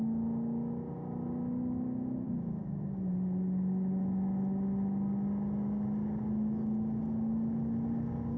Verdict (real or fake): real